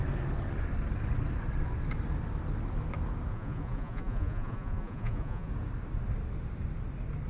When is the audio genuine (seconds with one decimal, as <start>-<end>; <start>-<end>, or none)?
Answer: 0.0-3.3; 5.5-7.3